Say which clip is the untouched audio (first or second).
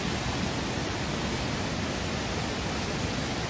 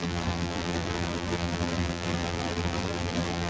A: first